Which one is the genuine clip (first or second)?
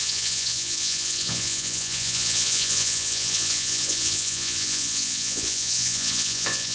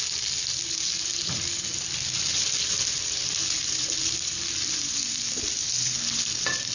second